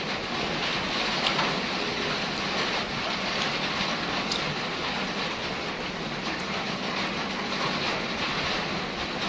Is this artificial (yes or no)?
no